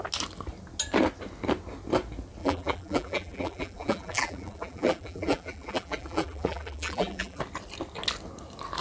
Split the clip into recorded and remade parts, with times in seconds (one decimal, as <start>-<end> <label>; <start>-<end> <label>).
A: 0.0-2.4 recorded; 2.4-7.4 remade; 7.4-8.8 recorded